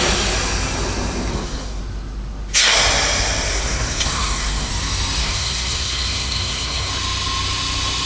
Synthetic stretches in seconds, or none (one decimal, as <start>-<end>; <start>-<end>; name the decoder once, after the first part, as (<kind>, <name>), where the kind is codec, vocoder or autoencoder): 1.3-1.8 (codec, SNAC); 3.5-4.7; 5.2-6.9